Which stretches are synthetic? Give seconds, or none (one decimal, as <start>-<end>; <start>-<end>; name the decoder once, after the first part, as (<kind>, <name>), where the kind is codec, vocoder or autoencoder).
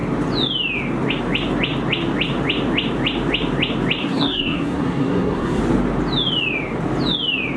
4.0-5.6 (codec, SNAC)